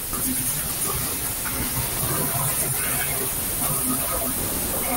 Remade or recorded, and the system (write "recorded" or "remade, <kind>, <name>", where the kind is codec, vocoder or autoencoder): remade, vocoder, BigVGAN v2